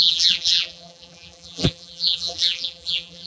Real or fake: fake